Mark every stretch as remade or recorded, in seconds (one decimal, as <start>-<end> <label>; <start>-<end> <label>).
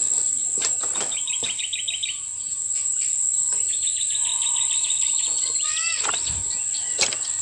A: 0.0-0.4 recorded; 0.4-1.6 remade; 1.6-7.4 recorded